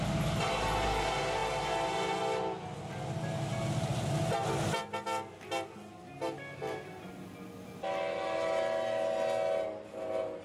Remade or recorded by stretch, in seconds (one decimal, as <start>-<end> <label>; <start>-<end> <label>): 0.0-10.4 recorded